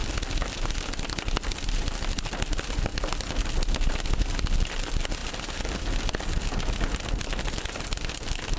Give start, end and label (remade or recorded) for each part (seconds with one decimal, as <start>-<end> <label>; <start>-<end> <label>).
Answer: 0.0-8.6 recorded